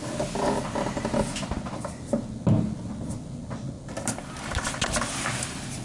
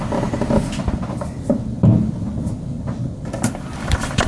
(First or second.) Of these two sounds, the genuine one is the first